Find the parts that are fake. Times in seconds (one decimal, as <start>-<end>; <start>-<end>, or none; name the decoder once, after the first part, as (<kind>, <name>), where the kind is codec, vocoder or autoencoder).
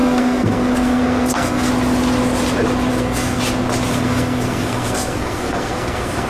0.0-1.7 (codec, SNAC); 2.9-3.4; 3.9-6.3